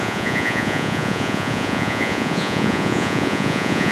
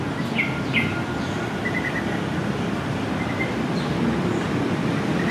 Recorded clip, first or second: second